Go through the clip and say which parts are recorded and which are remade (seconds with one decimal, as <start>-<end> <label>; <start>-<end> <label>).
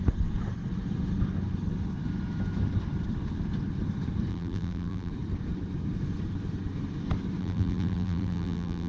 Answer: 0.0-4.3 recorded; 4.3-5.1 remade; 5.1-7.4 recorded; 7.4-8.9 remade